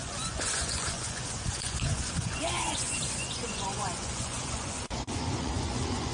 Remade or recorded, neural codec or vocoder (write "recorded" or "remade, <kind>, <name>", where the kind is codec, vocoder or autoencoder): remade, vocoder, Vocos